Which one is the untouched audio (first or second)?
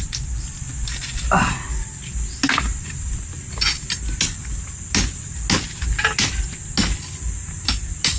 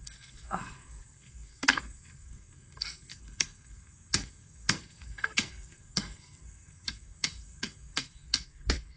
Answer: first